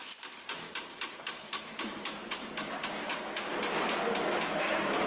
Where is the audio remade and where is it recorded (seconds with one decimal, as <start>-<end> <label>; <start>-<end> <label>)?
0.0-3.1 remade; 3.1-5.1 recorded